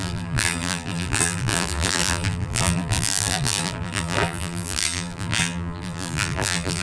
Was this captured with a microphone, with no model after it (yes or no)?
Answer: no